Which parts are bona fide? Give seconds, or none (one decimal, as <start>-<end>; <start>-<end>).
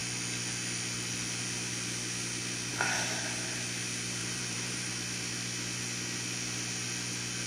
0.0-4.2; 4.9-7.5